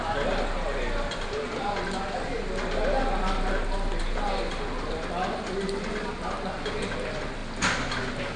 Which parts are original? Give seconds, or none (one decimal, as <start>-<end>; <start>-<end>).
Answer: 0.0-8.4